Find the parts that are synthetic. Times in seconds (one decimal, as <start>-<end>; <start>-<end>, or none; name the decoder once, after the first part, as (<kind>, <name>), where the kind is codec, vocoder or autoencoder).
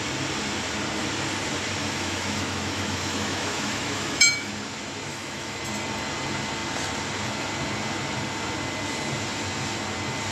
1.8-4.5 (autoencoder, DAC-VAE); 5.1-5.6